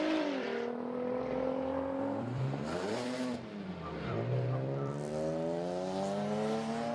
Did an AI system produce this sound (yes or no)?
yes